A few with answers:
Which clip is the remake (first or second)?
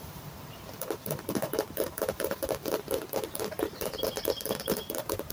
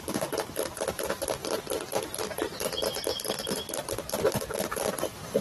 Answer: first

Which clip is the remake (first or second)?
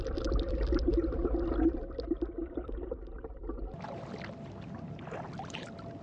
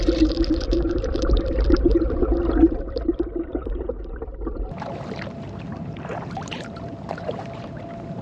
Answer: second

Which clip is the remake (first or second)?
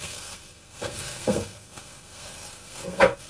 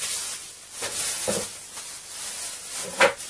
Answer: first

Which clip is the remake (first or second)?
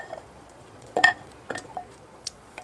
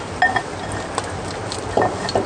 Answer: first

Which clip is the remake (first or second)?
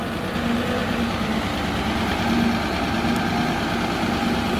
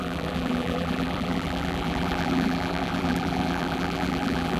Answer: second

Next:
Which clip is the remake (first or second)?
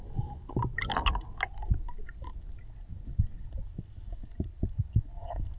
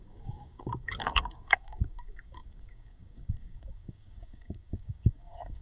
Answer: second